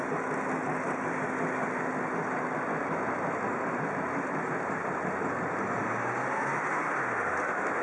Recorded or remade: recorded